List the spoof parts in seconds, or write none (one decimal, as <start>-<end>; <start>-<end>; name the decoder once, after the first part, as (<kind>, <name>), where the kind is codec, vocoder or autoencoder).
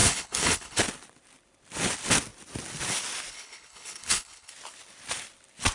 0.0-0.8 (codec, HILCodec); 3.3-4.5